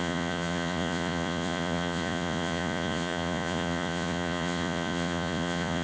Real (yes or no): no